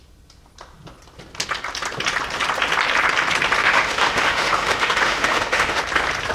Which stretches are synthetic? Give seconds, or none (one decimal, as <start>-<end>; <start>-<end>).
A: 3.6-5.8